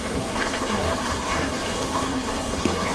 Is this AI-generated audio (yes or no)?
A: yes